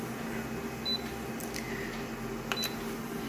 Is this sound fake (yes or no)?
no